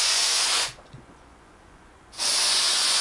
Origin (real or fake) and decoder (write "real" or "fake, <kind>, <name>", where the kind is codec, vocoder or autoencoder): fake, vocoder, Vocos